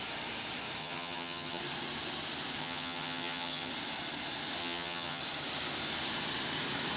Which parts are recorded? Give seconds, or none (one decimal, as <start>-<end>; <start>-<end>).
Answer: 0.0-0.8; 1.6-2.6; 3.7-4.6; 5.2-7.0